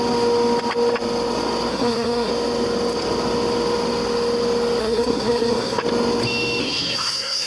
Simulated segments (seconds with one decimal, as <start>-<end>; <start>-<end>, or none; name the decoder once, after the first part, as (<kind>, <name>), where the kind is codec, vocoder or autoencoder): 1.7-2.3 (codec, SNAC); 4.8-5.8; 6.6-7.5